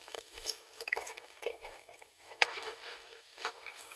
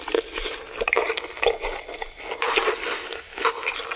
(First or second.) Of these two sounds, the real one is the second